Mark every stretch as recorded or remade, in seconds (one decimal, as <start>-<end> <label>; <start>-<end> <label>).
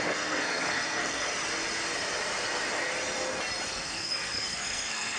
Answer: 0.0-1.3 remade; 1.3-3.7 recorded; 3.7-5.2 remade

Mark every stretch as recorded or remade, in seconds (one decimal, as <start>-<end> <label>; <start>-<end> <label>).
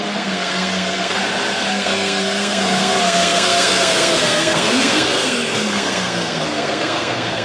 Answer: 0.0-1.2 remade; 1.2-1.7 recorded; 1.7-7.4 remade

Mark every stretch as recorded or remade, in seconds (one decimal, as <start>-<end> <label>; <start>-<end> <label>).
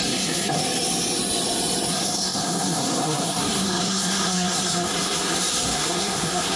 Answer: 0.0-0.6 remade; 0.6-1.9 recorded; 1.9-6.6 remade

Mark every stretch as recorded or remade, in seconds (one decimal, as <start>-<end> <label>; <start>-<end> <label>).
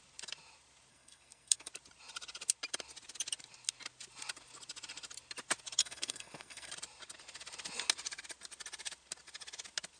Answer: 0.0-0.9 recorded; 0.9-1.7 remade; 1.7-5.8 recorded; 5.8-6.7 remade; 6.7-10.0 recorded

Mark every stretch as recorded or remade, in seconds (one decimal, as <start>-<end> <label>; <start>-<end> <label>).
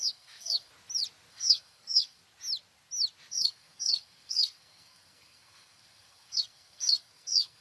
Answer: 0.0-0.7 remade; 0.7-1.3 recorded; 1.3-2.2 remade; 2.2-3.3 recorded; 3.3-7.6 remade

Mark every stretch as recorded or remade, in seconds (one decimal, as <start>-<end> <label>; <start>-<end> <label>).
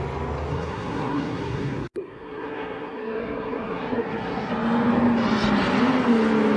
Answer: 0.0-0.5 recorded; 0.5-4.5 remade; 4.5-6.6 recorded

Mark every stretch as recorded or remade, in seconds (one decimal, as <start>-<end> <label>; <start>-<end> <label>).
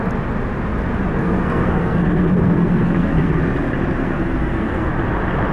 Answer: 0.0-1.2 recorded; 1.2-3.4 remade; 3.4-4.0 recorded; 4.0-4.9 remade; 4.9-5.5 recorded